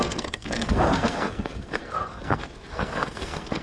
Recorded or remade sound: remade